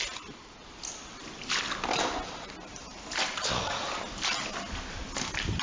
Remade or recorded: recorded